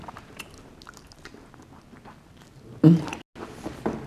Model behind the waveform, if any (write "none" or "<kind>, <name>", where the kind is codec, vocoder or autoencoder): none